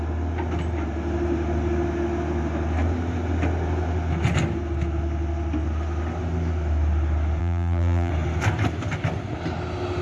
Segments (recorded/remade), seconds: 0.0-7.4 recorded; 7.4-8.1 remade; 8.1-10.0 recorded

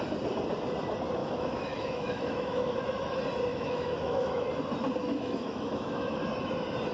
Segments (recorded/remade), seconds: 0.0-1.2 recorded; 1.2-2.8 remade; 2.8-3.5 recorded; 3.5-4.5 remade; 4.5-5.0 recorded; 5.0-6.2 remade; 6.2-6.9 recorded